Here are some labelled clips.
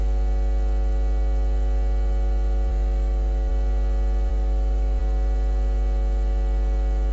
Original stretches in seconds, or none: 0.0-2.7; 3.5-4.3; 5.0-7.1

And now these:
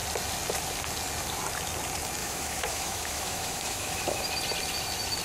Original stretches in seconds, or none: 0.0-2.2; 4.2-5.2

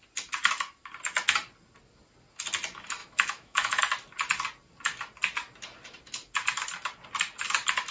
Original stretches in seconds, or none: 0.0-3.0; 3.8-7.9

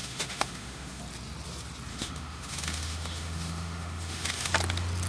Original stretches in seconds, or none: 1.0-1.9; 4.5-5.1

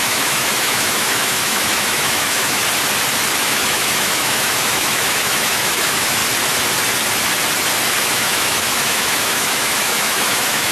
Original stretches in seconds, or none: 2.6-3.4; 6.2-8.0